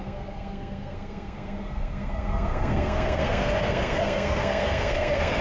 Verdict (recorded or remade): remade